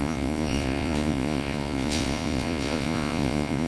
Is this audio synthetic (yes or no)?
yes